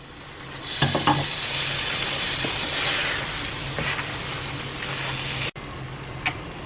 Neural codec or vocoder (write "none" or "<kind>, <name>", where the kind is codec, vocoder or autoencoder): none